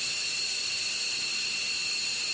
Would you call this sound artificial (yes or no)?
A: no